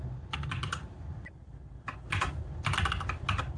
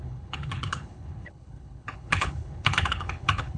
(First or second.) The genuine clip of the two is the first